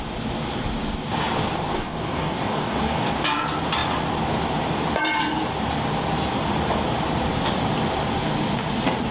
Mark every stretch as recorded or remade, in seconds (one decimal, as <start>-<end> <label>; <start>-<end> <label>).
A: 0.0-1.7 recorded; 1.7-3.1 remade; 3.1-9.1 recorded